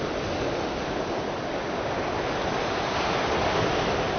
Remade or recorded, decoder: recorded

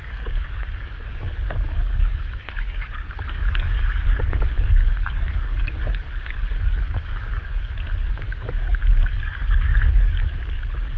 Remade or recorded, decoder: remade, codec, DAC